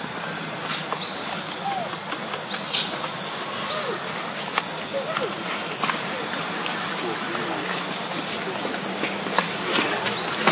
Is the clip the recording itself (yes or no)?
yes